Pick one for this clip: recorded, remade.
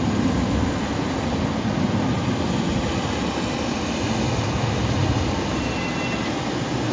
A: recorded